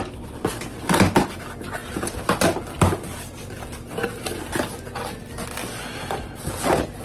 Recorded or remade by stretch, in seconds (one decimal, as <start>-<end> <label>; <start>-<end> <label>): 0.0-7.0 recorded